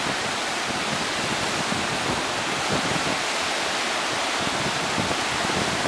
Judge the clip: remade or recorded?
recorded